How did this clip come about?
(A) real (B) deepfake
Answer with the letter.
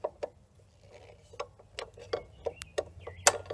A